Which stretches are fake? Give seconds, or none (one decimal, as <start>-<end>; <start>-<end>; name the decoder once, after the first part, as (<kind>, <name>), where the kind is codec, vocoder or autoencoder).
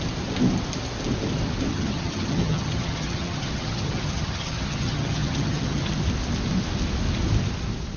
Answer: 1.7-5.9 (vocoder, HiFi-GAN)